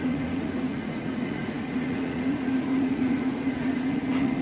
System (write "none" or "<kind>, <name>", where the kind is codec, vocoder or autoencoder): vocoder, Vocos